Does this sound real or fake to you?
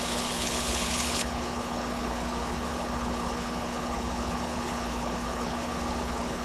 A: fake